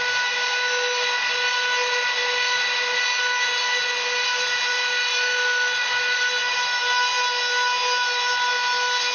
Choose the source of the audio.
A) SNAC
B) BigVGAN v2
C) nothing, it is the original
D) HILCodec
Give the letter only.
C